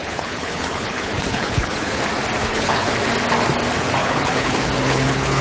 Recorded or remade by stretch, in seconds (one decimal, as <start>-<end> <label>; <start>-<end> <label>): 0.0-2.0 remade; 2.0-2.4 recorded; 2.4-2.9 remade; 2.9-4.0 recorded; 4.0-5.4 remade